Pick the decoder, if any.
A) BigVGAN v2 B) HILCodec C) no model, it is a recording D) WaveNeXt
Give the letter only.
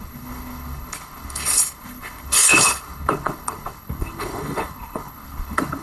B